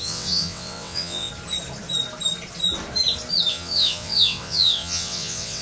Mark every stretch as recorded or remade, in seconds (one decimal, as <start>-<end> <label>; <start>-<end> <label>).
0.0-1.3 remade; 1.3-3.5 recorded; 3.5-5.6 remade